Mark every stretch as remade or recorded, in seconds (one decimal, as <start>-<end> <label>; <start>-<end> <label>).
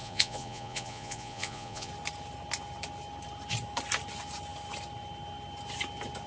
0.0-1.9 remade; 1.9-6.3 recorded